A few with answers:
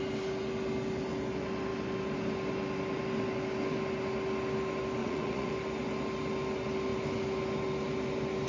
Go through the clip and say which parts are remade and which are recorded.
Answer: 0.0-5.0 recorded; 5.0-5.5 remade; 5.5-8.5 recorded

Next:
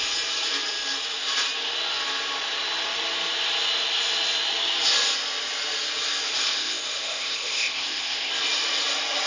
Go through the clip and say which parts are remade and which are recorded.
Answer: 0.0-6.3 recorded; 6.3-8.3 remade; 8.3-9.3 recorded

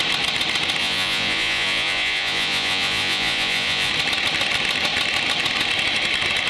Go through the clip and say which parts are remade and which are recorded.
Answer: 0.0-0.8 recorded; 0.8-3.9 remade; 3.9-6.5 recorded

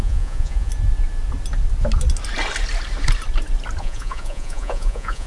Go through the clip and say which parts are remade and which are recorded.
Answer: 0.0-0.7 remade; 0.7-3.8 recorded; 3.8-5.3 remade

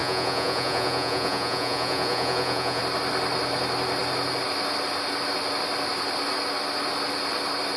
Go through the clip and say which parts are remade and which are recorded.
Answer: 0.0-2.8 remade; 2.8-7.8 recorded

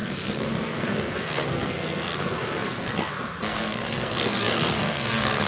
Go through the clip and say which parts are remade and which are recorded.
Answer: 0.0-5.5 remade

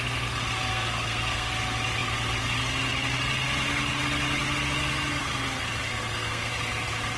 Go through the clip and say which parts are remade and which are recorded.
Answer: 0.0-0.7 recorded; 0.7-1.5 remade; 1.5-5.9 recorded; 5.9-6.5 remade; 6.5-7.2 recorded